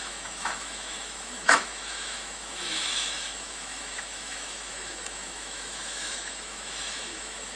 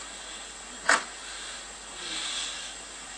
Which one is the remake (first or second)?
first